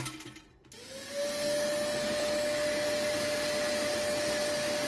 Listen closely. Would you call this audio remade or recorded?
recorded